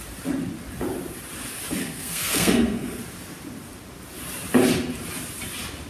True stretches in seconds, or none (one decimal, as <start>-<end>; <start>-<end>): 0.0-1.8; 3.0-5.9